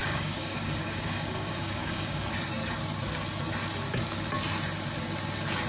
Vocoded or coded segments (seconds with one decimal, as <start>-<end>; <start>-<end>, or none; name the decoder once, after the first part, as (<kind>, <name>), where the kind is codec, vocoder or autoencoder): 0.0-2.3 (codec, DAC)